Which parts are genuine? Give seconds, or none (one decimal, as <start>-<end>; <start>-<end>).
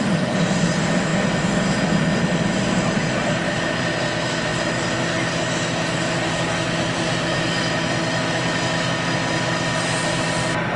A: 0.0-10.8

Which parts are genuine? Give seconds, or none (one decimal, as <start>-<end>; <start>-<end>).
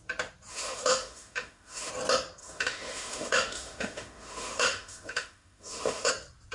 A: 0.0-0.5; 1.9-2.4; 6.1-6.5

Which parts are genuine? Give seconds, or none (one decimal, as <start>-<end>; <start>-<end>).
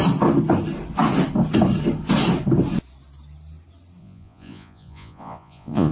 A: 0.0-4.0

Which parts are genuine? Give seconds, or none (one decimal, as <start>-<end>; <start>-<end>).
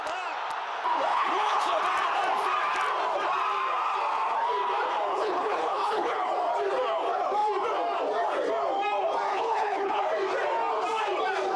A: 0.0-1.1; 1.8-5.1; 6.2-9.3; 10.0-11.6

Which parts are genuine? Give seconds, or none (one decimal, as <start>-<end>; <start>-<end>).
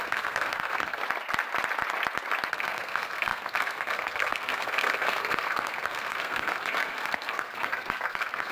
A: 1.0-2.5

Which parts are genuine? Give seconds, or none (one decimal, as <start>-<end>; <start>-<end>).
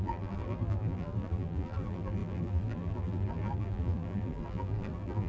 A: none